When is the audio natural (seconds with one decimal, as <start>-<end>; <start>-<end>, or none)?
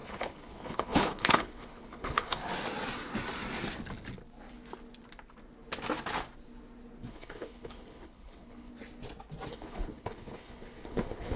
2.4-7.1; 8.7-9.5